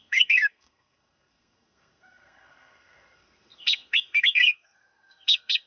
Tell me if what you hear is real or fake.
fake